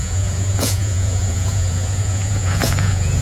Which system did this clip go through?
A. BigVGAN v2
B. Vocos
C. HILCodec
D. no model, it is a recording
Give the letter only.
B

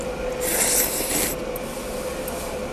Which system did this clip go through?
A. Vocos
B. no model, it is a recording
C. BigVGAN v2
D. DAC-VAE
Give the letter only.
B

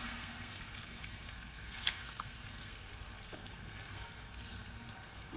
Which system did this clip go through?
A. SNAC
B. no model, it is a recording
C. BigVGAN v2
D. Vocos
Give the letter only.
A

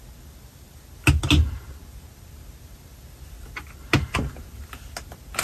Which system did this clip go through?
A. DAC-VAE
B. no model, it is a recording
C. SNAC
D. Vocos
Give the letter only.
B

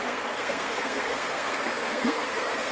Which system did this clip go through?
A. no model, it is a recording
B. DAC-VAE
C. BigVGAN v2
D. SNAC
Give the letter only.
D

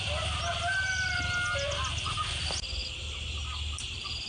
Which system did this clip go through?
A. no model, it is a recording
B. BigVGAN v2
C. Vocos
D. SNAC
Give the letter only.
A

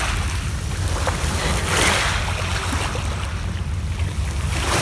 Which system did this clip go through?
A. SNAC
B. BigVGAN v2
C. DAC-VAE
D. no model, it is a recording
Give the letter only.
D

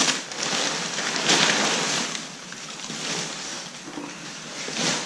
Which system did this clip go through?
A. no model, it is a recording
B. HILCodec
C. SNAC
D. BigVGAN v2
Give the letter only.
A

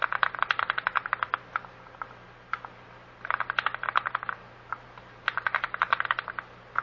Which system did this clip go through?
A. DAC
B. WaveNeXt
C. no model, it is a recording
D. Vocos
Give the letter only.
C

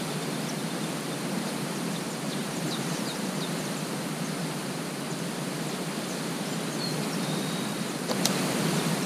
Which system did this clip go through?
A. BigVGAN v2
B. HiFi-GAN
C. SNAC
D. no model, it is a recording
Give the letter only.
A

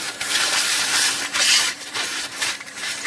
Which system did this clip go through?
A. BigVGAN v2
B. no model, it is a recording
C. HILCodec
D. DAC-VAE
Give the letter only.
A